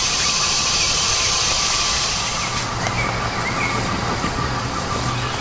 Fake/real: real